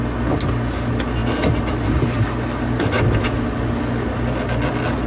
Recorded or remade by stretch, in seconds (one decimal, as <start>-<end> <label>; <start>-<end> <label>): 0.0-5.1 recorded